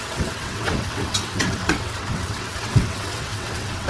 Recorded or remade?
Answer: remade